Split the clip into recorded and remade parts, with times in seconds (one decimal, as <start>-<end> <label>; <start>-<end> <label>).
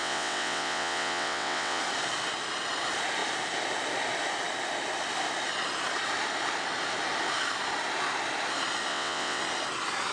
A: 0.0-1.8 remade; 1.8-8.9 recorded; 8.9-9.4 remade; 9.4-10.1 recorded